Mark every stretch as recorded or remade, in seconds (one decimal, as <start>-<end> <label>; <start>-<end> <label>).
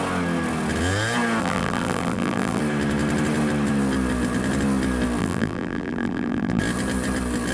0.0-1.4 recorded; 1.4-2.6 remade; 2.6-5.2 recorded; 5.2-6.6 remade; 6.6-7.5 recorded